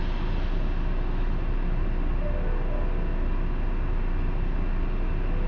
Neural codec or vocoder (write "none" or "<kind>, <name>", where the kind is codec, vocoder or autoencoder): none